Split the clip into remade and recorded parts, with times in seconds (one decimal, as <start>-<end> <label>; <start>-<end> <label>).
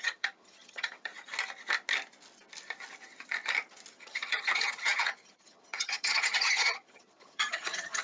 0.0-1.1 remade; 1.1-3.9 recorded; 3.9-8.0 remade